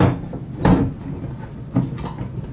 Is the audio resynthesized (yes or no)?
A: no